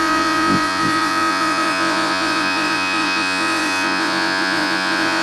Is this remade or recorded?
remade